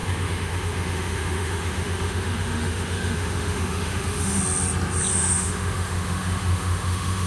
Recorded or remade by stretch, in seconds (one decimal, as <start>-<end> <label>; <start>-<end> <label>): 0.0-4.4 remade; 4.4-5.1 recorded; 5.1-7.3 remade

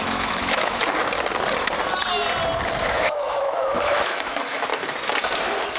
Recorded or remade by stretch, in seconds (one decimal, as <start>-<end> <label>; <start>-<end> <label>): 0.0-0.8 remade; 0.8-2.8 recorded; 2.8-4.7 remade; 4.7-5.8 recorded

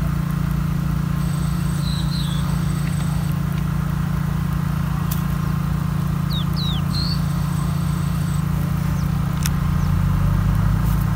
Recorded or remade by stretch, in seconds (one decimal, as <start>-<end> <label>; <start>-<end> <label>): 0.0-1.2 recorded; 1.2-3.3 remade; 3.3-6.9 recorded; 6.9-8.4 remade; 8.4-11.2 recorded

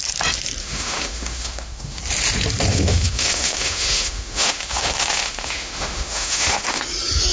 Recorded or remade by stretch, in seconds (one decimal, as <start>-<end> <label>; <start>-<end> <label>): 0.0-0.6 recorded; 0.6-2.0 remade; 2.0-2.7 recorded; 2.7-6.8 remade; 6.8-7.3 recorded